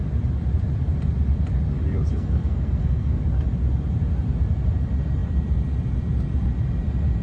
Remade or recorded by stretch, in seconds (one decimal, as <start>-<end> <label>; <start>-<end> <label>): 0.0-2.1 recorded; 2.1-3.2 remade; 3.2-7.2 recorded